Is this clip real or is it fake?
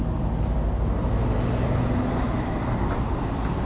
real